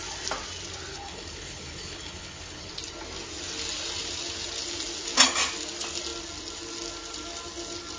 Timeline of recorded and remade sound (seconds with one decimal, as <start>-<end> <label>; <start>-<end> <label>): 0.0-0.9 recorded; 0.9-2.7 remade; 2.7-8.0 recorded

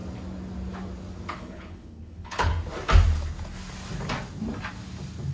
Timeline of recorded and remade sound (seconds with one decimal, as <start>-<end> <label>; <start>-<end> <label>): 0.0-1.3 recorded; 1.3-2.5 remade; 2.5-5.3 recorded

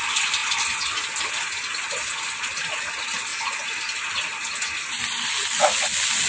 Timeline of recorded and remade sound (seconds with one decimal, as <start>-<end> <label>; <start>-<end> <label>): 0.0-6.3 recorded

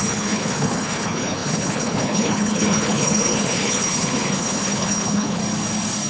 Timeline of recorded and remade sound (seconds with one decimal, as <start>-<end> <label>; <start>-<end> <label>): 0.0-5.4 remade; 5.4-6.1 recorded